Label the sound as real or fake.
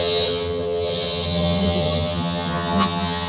fake